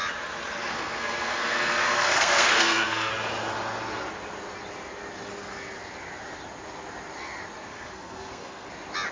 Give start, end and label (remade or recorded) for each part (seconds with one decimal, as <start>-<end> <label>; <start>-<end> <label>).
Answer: 0.0-0.7 recorded; 0.7-3.1 remade; 3.1-7.7 recorded; 7.7-8.7 remade; 8.7-9.1 recorded